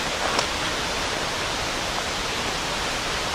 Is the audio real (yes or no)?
yes